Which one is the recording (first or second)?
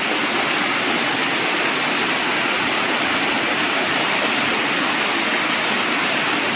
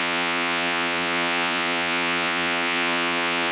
first